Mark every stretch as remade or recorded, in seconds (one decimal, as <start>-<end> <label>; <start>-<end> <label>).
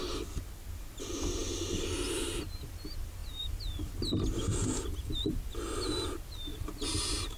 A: 0.0-6.5 recorded; 6.5-7.4 remade